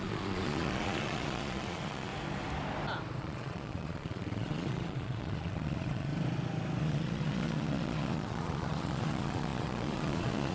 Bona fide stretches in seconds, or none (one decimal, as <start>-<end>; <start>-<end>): 2.1-3.2; 6.1-6.8